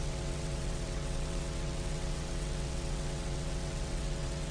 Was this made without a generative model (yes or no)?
no